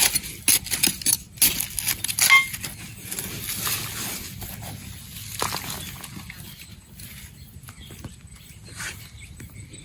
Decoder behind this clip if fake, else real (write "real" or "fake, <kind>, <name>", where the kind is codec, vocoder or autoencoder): real